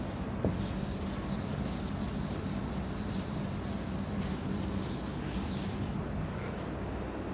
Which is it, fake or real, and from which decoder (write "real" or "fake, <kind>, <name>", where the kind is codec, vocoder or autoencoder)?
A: real